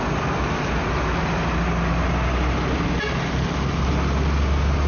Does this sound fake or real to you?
real